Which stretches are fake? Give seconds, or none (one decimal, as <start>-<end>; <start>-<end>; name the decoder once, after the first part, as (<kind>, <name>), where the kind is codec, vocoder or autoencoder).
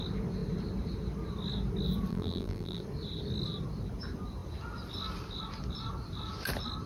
2.1-2.8 (vocoder, BigVGAN v2)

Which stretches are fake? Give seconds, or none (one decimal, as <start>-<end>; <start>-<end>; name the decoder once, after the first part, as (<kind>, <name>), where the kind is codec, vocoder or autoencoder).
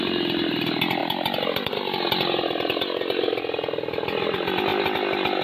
none